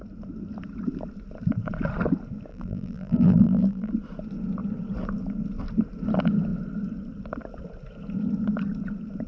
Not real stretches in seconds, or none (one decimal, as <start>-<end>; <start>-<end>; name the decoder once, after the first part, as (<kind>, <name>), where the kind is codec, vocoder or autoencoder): 2.5-3.9 (vocoder, BigVGAN v2)